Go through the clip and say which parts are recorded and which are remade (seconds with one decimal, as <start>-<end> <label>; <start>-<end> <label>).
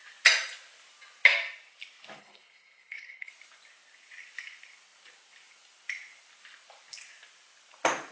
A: 0.0-2.2 recorded; 2.2-3.3 remade; 3.3-8.1 recorded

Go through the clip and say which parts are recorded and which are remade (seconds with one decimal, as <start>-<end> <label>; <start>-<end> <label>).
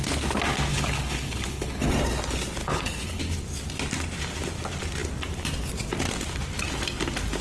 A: 0.0-0.7 recorded; 0.7-1.9 remade; 1.9-2.6 recorded; 2.6-3.2 remade; 3.2-7.4 recorded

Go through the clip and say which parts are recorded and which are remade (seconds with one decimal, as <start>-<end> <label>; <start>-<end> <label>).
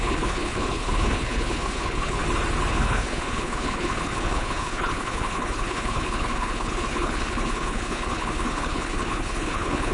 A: 0.0-2.2 remade; 2.2-2.7 recorded; 2.7-9.9 remade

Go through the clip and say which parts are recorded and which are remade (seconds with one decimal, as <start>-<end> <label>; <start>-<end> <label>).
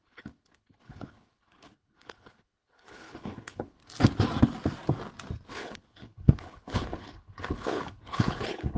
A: 0.0-3.8 remade; 3.8-5.5 recorded; 5.5-8.8 remade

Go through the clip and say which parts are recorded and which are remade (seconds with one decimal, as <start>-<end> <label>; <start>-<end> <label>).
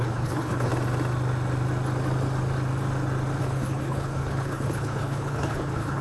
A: 0.0-0.7 remade; 0.7-3.4 recorded; 3.4-6.0 remade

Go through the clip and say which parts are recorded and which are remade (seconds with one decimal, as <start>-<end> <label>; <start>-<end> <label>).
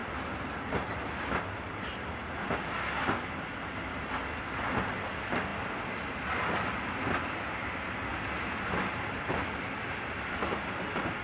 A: 0.0-11.2 recorded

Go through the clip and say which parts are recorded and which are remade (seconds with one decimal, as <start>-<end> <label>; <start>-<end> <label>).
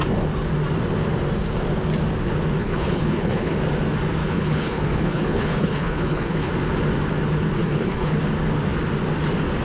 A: 0.0-2.6 recorded; 2.6-3.6 remade; 3.6-4.2 recorded; 4.2-6.5 remade; 6.5-7.6 recorded; 7.6-8.2 remade; 8.2-9.6 recorded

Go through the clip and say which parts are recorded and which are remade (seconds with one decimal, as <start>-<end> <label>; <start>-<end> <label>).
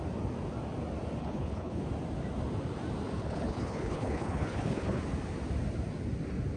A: 0.0-1.2 recorded; 1.2-1.8 remade; 1.8-3.2 recorded; 3.2-5.0 remade; 5.0-6.6 recorded